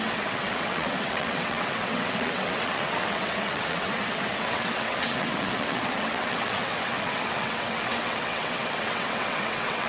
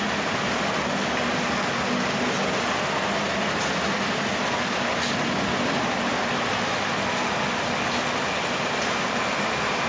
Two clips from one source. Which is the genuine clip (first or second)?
second